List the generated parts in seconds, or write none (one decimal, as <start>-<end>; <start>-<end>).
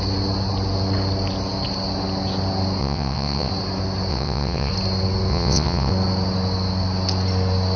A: 2.8-3.5; 4.1-4.7; 5.3-5.9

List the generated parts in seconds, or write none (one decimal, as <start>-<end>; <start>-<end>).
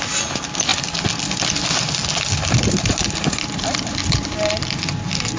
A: none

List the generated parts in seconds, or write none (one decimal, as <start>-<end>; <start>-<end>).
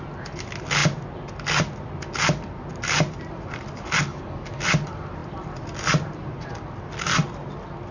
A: 4.1-4.6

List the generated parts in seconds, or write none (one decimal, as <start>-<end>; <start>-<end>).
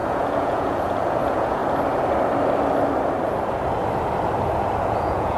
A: 0.0-1.6; 4.8-5.4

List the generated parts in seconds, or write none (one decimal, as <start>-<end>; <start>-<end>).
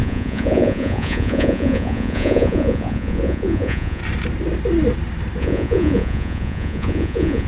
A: 0.0-4.0; 5.4-7.5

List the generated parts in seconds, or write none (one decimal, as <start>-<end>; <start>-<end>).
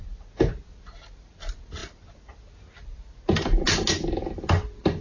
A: none